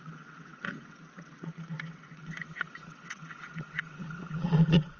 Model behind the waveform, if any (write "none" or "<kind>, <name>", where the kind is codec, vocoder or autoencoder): vocoder, WaveNeXt